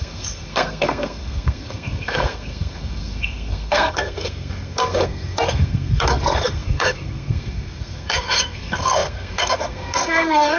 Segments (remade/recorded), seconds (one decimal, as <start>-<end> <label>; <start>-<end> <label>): 0.0-10.6 remade